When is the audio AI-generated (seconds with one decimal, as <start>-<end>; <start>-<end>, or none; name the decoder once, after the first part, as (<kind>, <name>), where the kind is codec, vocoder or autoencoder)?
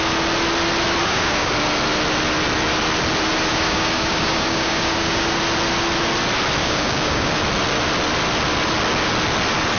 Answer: 1.0-1.5 (codec, DAC); 3.5-5.4; 6.6-7.3